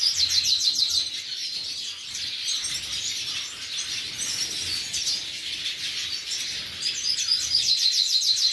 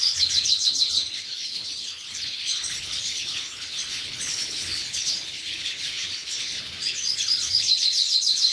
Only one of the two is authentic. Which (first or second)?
first